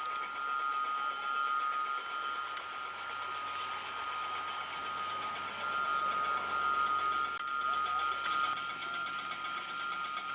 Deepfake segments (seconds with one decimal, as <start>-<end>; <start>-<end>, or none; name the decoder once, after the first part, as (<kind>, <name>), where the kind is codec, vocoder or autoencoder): none